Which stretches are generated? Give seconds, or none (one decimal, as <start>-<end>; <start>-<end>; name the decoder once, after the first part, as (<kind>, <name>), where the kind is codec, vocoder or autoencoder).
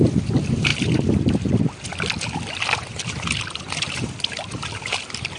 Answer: none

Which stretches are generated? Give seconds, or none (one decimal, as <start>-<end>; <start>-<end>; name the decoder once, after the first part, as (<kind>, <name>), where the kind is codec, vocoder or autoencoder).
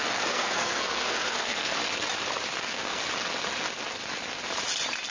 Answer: 0.0-1.8 (codec, SNAC); 2.6-3.0